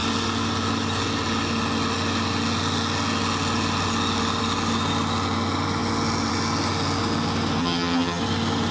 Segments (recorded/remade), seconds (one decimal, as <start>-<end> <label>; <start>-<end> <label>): 0.0-7.6 recorded; 7.6-8.2 remade; 8.2-8.7 recorded